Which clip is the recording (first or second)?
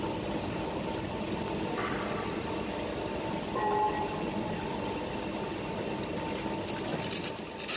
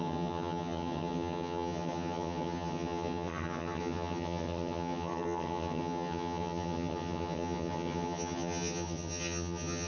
first